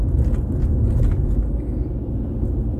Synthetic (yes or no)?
no